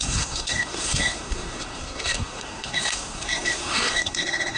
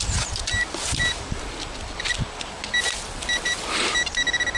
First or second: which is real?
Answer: second